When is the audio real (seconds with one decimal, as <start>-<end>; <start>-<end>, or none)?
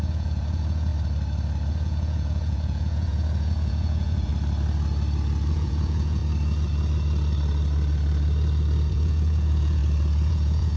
0.9-1.7; 4.3-5.5; 6.2-8.9; 9.8-10.3